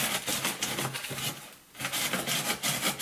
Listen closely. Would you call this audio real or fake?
real